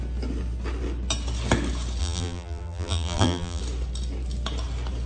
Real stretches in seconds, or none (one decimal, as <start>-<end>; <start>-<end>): 0.0-2.0; 3.6-5.1